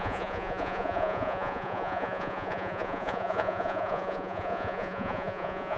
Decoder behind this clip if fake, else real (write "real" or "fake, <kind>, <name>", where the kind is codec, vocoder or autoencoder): fake, vocoder, Vocos